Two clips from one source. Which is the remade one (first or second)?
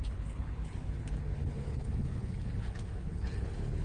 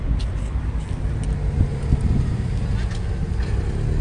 first